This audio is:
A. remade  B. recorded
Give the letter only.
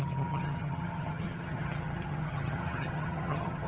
A